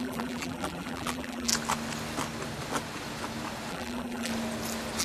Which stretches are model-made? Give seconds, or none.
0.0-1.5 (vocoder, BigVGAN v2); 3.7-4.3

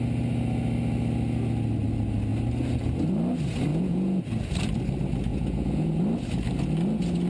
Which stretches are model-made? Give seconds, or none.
3.7-4.2 (vocoder, Vocos); 5.3-6.0

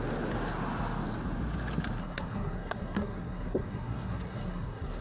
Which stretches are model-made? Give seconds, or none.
2.0-5.0 (codec, SNAC)

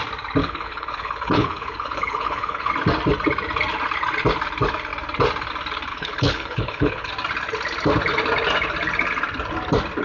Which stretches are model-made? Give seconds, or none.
0.4-2.7 (codec, HILCodec); 5.9-7.1

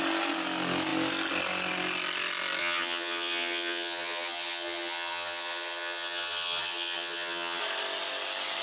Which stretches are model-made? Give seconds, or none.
2.6-7.6 (vocoder, HiFi-GAN)

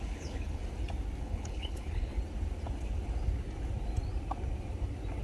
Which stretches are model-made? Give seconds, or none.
0.0-0.6 (codec, HILCodec); 1.2-2.1